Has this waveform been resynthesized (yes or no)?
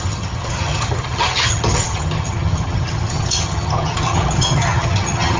yes